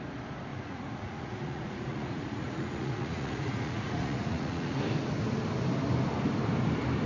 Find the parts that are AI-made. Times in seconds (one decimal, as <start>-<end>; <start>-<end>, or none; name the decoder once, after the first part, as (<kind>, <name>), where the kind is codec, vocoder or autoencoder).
0.5-4.8 (vocoder, Vocos)